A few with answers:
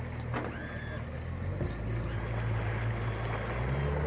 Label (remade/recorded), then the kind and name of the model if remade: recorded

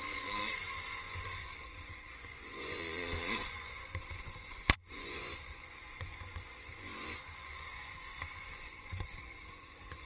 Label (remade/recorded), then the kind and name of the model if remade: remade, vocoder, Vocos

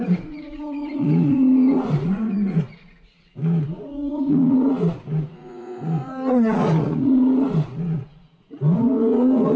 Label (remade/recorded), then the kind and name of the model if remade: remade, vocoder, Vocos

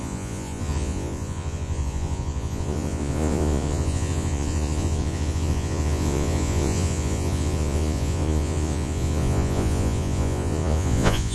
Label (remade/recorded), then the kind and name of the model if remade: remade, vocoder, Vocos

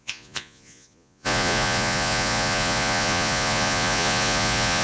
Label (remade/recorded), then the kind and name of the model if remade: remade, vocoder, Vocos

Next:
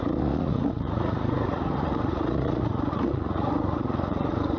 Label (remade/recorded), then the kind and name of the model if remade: remade, vocoder, Vocos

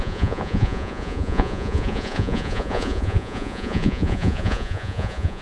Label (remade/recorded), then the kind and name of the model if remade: remade, vocoder, Vocos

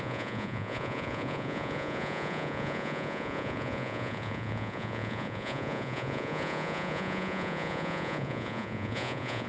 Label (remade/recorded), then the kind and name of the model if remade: remade, vocoder, Vocos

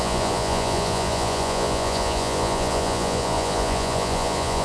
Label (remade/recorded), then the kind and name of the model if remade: remade, vocoder, Vocos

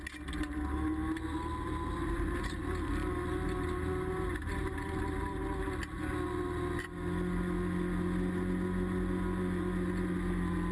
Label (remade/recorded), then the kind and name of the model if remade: recorded